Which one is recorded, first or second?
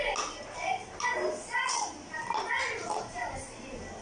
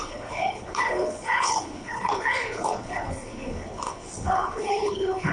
first